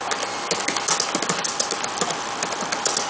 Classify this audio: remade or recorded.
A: recorded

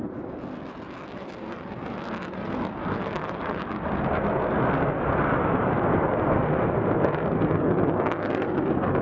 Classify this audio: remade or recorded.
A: recorded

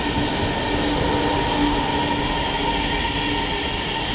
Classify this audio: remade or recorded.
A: recorded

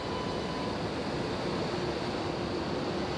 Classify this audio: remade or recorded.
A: recorded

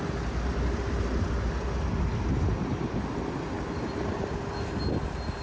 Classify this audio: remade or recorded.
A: recorded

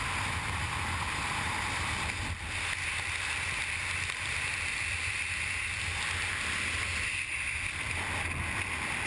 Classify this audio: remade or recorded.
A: recorded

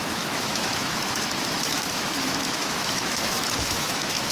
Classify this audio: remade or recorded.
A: remade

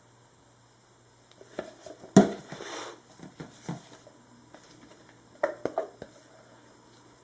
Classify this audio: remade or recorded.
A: recorded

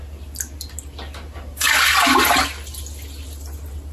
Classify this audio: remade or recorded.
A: recorded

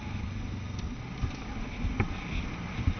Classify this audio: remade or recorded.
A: recorded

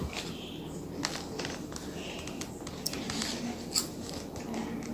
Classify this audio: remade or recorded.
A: recorded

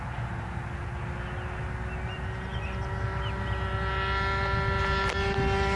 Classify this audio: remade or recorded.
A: recorded